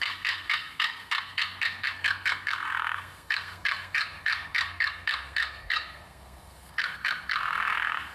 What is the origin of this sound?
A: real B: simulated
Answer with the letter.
B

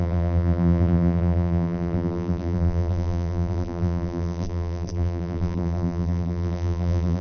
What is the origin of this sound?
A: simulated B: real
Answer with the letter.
A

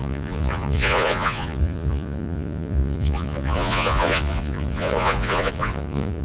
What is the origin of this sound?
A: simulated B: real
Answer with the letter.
A